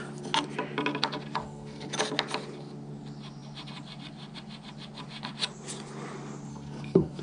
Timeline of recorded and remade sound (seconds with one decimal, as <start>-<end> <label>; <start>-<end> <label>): 0.0-1.4 recorded; 1.4-1.9 remade; 1.9-6.5 recorded; 6.5-7.2 remade

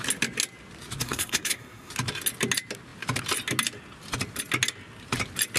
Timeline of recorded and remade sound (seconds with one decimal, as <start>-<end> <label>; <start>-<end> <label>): 0.0-1.0 recorded; 1.0-1.9 remade; 1.9-5.6 recorded

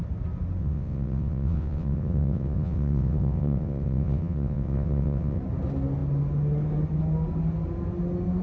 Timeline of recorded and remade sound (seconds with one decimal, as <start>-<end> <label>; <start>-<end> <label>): 0.0-0.6 recorded; 0.6-5.4 remade; 5.4-8.4 recorded